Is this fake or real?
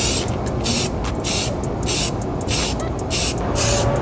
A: real